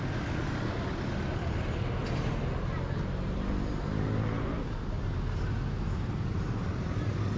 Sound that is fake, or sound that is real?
real